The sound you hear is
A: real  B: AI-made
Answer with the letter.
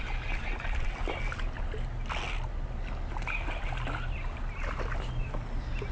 A